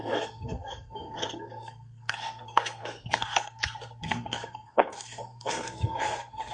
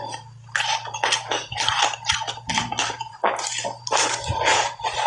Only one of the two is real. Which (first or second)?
second